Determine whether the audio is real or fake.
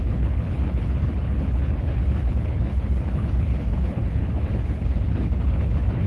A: fake